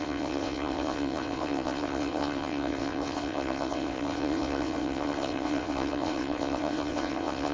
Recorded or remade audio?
remade